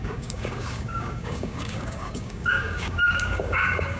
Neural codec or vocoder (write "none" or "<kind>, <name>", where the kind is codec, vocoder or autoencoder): codec, DAC